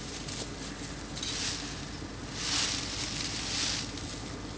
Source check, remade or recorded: recorded